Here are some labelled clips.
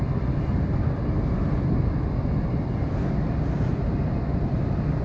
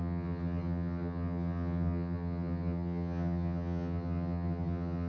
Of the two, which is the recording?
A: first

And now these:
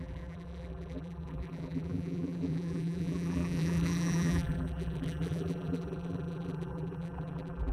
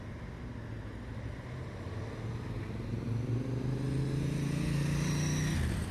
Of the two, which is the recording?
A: second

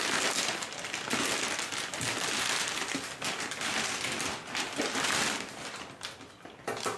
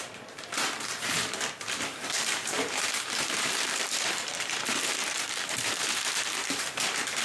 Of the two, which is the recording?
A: first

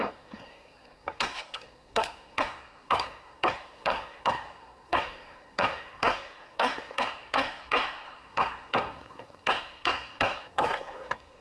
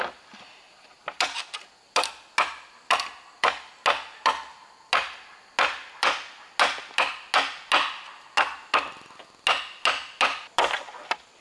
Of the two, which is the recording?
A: second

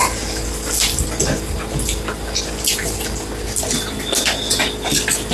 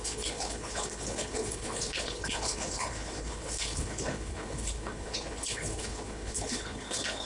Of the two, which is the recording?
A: first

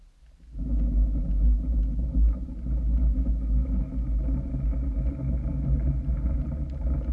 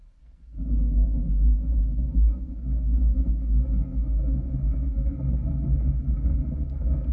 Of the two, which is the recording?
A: first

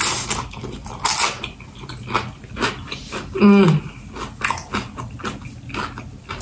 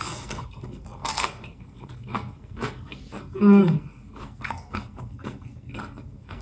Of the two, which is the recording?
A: first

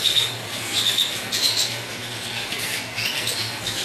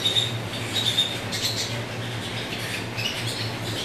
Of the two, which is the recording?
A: second